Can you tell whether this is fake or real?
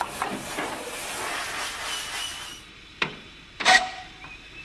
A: real